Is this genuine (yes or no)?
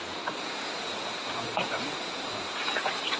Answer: no